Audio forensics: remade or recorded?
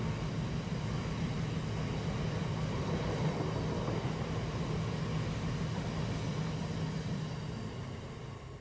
recorded